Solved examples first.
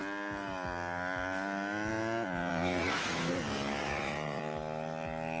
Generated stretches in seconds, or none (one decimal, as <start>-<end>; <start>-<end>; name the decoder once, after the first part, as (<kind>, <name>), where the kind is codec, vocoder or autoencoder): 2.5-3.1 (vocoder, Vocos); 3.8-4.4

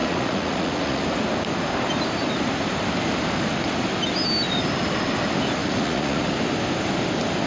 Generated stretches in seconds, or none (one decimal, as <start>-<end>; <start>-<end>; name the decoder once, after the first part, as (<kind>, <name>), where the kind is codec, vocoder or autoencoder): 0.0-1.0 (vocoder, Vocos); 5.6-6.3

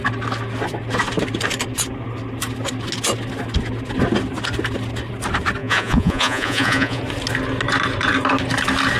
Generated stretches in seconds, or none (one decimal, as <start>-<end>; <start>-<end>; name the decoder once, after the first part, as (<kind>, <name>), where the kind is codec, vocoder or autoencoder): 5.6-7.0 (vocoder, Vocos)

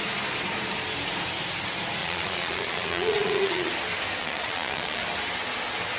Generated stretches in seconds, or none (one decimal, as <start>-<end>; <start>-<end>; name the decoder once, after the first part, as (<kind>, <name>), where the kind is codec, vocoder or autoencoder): 2.0-3.7 (vocoder, Vocos); 4.2-5.0

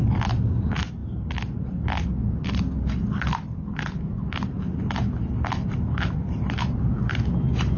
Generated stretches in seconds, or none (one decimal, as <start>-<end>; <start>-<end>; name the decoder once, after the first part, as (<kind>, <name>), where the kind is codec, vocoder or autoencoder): none

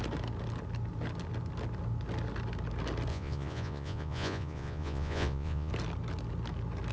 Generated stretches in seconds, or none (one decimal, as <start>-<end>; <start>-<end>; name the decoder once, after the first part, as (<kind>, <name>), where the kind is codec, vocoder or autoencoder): 3.1-5.7 (vocoder, Vocos)